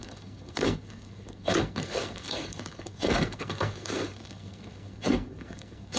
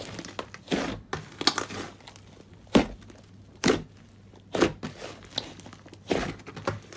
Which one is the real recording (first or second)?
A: second